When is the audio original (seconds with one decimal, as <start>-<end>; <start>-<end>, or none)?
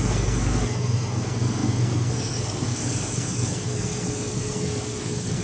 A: none